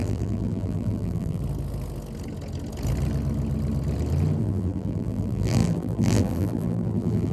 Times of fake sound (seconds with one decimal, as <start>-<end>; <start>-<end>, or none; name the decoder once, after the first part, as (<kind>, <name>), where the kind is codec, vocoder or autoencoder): 0.0-1.4 (vocoder, BigVGAN v2); 4.4-7.3

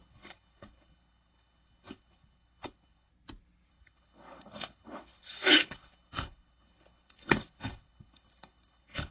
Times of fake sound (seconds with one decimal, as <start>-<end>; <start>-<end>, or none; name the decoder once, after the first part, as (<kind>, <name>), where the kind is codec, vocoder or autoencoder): 0.0-3.1 (codec, HILCodec); 3.7-9.1

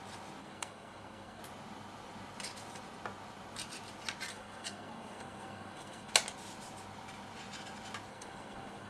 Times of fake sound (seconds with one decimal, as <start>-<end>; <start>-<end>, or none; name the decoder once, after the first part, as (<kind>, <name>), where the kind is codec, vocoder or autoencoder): 0.4-1.4 (codec, SNAC); 4.3-6.1; 8.1-8.9

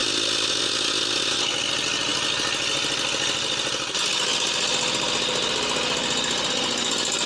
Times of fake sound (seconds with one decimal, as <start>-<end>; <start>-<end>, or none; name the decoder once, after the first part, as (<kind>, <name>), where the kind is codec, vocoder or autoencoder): none

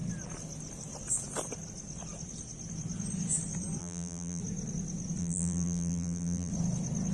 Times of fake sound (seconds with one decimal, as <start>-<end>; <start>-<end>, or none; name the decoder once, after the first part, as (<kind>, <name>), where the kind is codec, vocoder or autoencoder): 3.8-4.4 (vocoder, BigVGAN v2); 5.2-6.5

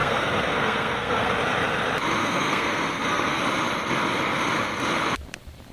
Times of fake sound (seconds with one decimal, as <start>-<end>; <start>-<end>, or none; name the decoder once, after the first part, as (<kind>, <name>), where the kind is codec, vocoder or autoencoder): 0.0-1.3 (codec, SNAC); 2.2-3.4

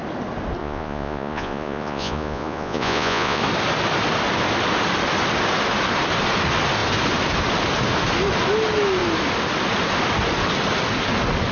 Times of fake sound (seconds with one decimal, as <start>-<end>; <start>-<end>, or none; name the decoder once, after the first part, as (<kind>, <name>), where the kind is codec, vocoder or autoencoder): 0.6-3.4 (vocoder, Vocos)

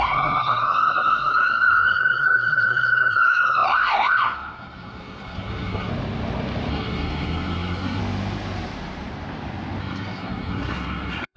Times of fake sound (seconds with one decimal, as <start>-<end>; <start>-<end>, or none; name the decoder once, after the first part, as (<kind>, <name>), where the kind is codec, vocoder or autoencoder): 0.0-5.9 (codec, SNAC); 6.7-8.0; 9.8-11.4